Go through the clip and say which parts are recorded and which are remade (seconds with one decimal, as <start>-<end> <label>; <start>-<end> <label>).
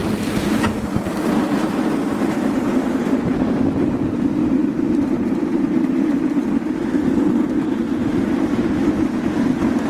0.0-1.5 remade; 1.5-3.0 recorded; 3.0-3.8 remade; 3.8-4.6 recorded; 4.6-6.8 remade; 6.8-7.7 recorded; 7.7-9.0 remade; 9.0-9.9 recorded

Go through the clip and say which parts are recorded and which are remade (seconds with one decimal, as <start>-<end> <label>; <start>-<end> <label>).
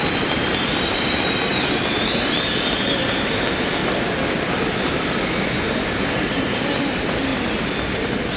0.0-3.8 remade; 3.8-4.8 recorded; 4.8-7.3 remade; 7.3-8.4 recorded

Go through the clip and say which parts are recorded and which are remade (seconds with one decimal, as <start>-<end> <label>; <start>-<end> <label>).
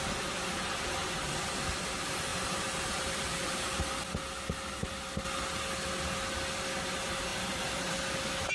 0.0-2.3 recorded; 2.3-3.8 remade; 3.8-7.3 recorded; 7.3-7.9 remade; 7.9-8.5 recorded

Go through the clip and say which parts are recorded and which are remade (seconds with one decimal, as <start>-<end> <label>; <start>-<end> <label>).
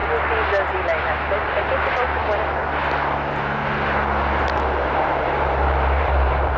0.0-1.0 recorded; 1.0-2.2 remade; 2.2-4.4 recorded; 4.4-6.6 remade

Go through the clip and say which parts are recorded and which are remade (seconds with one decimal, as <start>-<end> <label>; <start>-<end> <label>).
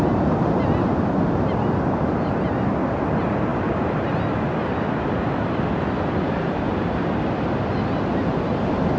0.0-9.0 recorded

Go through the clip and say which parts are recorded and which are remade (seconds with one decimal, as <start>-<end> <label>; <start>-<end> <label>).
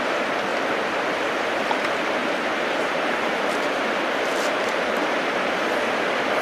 0.0-2.2 recorded; 2.2-5.7 remade; 5.7-6.4 recorded